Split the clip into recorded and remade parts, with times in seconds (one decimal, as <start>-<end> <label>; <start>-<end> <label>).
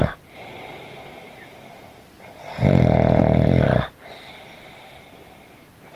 0.0-1.5 remade; 1.5-6.0 recorded